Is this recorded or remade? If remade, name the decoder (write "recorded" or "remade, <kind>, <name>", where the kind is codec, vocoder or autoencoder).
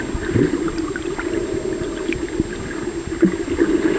recorded